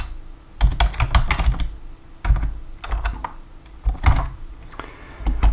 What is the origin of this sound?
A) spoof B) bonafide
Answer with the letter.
B